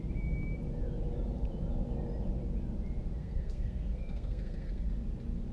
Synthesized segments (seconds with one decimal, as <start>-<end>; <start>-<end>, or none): 3.2-4.9